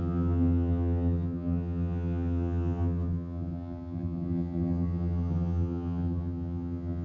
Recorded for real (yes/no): no